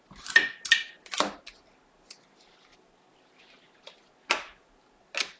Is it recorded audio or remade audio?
recorded